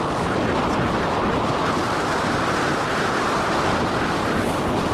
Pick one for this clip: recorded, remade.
recorded